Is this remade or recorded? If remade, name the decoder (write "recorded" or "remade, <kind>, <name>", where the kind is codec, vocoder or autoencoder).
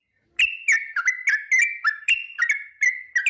recorded